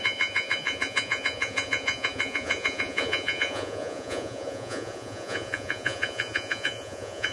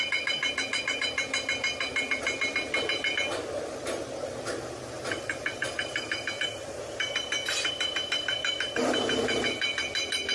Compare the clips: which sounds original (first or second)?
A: second